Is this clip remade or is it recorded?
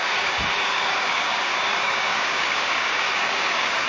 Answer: remade